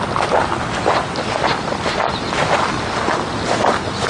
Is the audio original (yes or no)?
yes